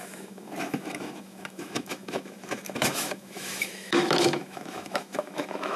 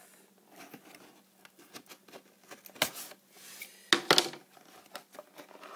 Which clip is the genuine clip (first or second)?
second